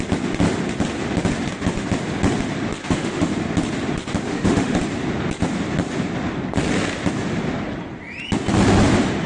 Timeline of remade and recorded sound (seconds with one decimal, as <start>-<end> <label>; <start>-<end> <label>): 0.0-2.8 recorded; 2.8-3.3 remade; 3.3-4.3 recorded; 4.3-4.8 remade; 4.8-9.3 recorded